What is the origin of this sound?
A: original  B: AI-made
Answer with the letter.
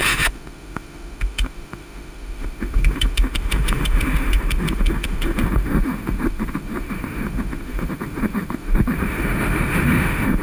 B